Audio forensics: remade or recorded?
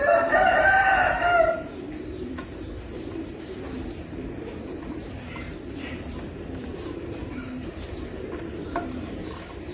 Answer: remade